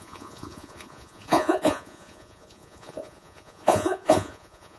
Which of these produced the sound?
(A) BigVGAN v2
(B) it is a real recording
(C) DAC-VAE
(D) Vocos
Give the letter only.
D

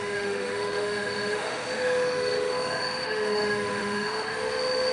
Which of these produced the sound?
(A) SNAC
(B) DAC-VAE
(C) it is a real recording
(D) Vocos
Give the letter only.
B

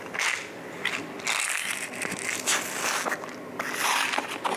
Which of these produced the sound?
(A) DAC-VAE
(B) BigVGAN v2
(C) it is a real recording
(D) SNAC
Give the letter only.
C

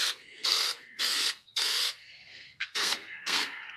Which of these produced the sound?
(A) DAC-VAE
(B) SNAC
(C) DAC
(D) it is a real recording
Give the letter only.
B